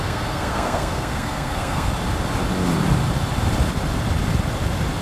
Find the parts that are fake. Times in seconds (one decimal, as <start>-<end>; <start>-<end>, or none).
0.0-1.9